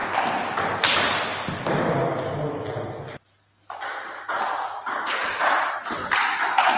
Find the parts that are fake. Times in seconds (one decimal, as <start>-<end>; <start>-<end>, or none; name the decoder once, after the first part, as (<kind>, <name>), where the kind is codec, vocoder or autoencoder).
none